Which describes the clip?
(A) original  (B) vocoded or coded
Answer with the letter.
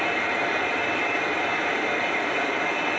B